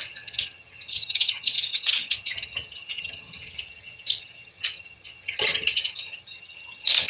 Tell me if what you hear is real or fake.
fake